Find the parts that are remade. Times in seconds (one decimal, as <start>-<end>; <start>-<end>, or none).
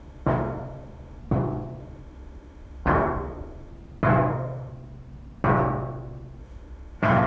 0.0-1.2; 1.8-3.7; 4.3-4.7; 6.4-7.3